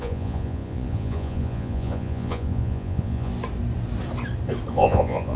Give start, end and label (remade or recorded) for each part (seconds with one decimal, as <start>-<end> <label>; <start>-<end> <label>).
0.0-3.3 remade; 3.3-4.7 recorded; 4.7-5.4 remade